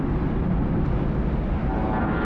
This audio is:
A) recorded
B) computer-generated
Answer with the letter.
A